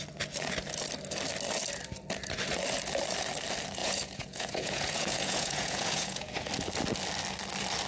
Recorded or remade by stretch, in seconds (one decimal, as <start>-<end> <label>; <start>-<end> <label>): 0.0-3.8 recorded; 3.8-6.5 remade; 6.5-7.9 recorded